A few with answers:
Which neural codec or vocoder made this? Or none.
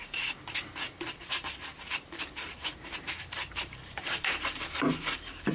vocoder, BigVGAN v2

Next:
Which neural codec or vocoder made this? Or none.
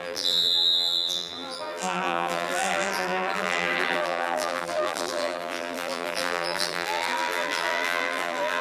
vocoder, BigVGAN v2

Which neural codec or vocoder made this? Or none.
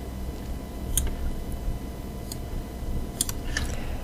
none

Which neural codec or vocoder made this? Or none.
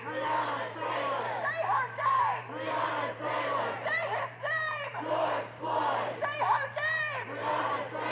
vocoder, BigVGAN v2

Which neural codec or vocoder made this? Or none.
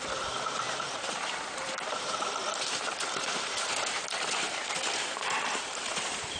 vocoder, BigVGAN v2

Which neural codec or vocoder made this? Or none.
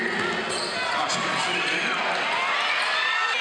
none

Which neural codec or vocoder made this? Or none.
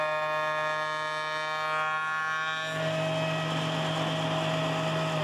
none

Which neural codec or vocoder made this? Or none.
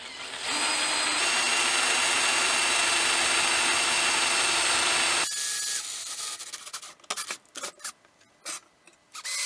none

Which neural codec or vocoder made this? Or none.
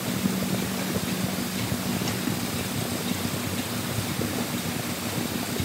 none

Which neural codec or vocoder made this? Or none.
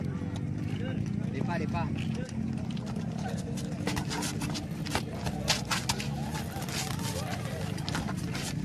none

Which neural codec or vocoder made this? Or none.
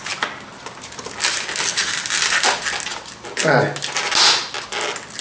none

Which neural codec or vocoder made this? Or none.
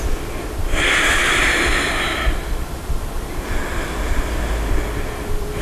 vocoder, BigVGAN v2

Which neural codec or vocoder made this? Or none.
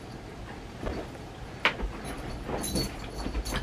none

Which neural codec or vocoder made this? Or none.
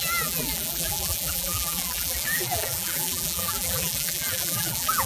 vocoder, BigVGAN v2